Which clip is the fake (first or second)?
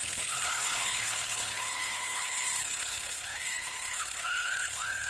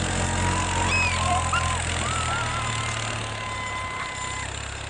first